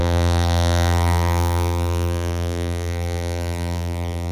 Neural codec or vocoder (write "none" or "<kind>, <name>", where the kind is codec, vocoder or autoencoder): vocoder, BigVGAN v2